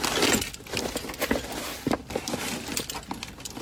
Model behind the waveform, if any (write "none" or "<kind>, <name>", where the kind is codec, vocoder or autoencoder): none